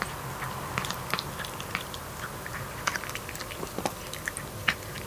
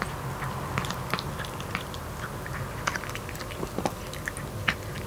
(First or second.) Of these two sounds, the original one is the second